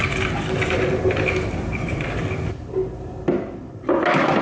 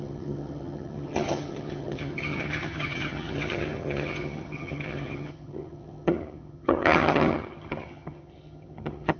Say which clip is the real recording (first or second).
first